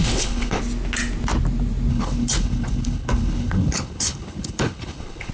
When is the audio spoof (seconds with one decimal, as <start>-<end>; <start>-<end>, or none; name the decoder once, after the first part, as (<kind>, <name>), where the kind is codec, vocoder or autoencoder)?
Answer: 0.0-0.6 (codec, HILCodec); 1.9-5.3